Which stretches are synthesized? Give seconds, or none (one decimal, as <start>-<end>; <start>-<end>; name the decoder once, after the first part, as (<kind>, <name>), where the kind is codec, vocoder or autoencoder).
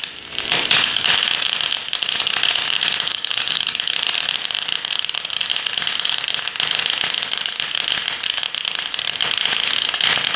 3.1-3.6 (codec, DAC)